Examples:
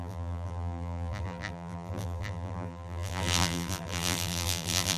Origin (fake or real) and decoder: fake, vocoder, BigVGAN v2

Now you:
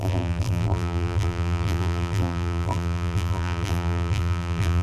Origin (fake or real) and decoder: fake, vocoder, BigVGAN v2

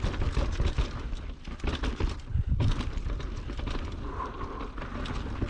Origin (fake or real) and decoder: real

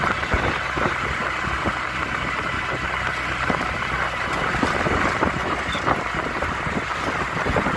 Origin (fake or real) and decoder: real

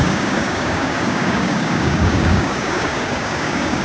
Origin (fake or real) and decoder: fake, codec, DAC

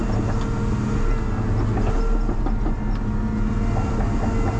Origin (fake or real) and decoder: real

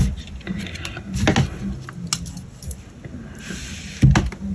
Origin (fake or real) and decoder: real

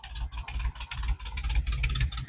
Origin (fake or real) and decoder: real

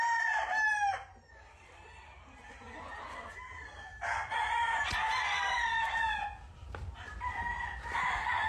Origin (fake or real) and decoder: real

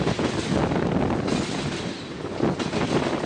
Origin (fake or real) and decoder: real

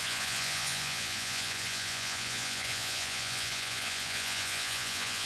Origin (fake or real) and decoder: fake, vocoder, Vocos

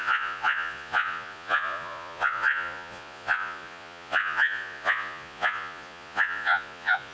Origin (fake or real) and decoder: fake, vocoder, Vocos